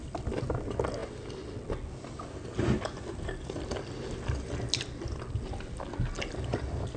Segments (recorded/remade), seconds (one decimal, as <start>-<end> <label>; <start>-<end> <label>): 0.0-7.0 recorded